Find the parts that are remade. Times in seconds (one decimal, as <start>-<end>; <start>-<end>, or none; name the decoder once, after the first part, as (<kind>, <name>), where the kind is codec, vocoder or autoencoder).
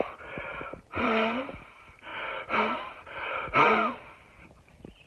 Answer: 0.5-1.5 (vocoder, BigVGAN v2)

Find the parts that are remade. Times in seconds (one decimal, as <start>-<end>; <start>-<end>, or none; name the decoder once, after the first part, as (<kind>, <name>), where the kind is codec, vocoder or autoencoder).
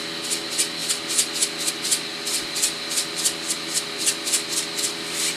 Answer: 2.1-5.4 (vocoder, BigVGAN v2)